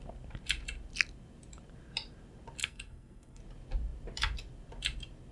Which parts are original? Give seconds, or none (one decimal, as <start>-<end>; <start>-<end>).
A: 0.0-2.6; 3.4-5.3